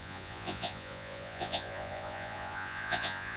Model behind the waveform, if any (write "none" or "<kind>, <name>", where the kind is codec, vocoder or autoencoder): vocoder, Vocos